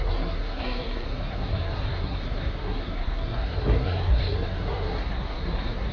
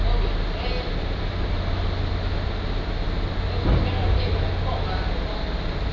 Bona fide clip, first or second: second